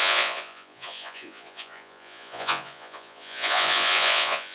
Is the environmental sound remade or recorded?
remade